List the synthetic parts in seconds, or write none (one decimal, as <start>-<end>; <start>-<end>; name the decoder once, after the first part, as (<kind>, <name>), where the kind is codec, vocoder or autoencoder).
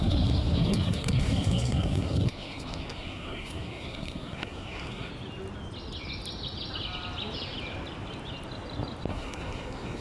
0.0-5.1 (codec, SNAC); 9.1-10.0